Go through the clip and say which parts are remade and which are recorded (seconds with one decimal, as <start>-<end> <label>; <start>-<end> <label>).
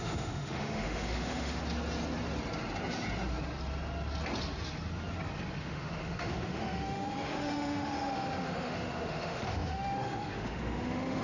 0.0-1.6 remade; 1.6-5.6 recorded; 5.6-11.2 remade